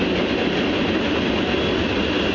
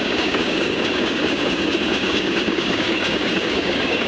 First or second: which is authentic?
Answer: first